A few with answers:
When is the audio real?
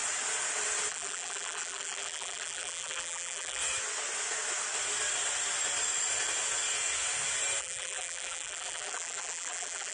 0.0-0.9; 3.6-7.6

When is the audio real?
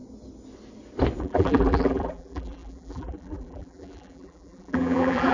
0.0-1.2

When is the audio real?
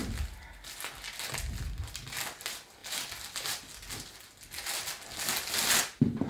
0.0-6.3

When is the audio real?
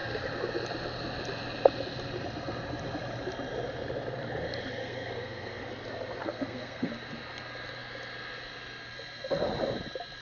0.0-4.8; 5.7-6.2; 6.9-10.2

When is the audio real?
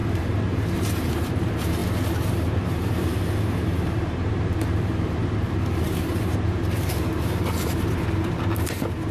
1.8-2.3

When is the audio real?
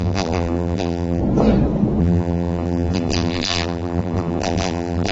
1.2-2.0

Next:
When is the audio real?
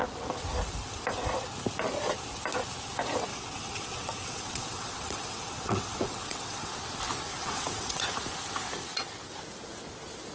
0.0-3.3; 6.7-7.3; 8.0-10.3